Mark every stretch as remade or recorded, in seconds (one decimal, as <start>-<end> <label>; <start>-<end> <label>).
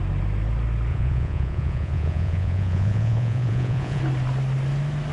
0.0-0.9 recorded; 0.9-4.0 remade; 4.0-5.1 recorded